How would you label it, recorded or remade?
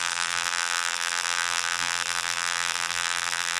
remade